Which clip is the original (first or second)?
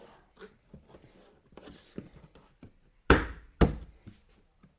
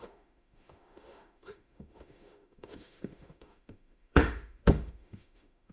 first